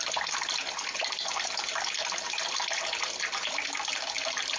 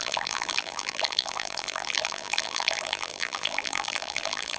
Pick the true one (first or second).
first